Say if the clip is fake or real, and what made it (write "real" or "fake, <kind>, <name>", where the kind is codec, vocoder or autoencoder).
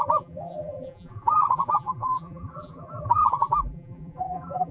fake, vocoder, BigVGAN v2